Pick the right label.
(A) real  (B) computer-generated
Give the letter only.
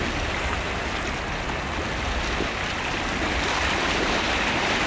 A